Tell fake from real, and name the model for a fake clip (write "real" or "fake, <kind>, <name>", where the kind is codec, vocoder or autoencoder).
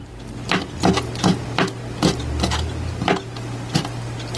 real